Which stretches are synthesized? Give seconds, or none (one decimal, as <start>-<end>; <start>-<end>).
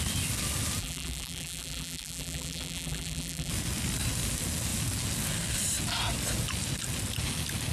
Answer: 0.8-3.5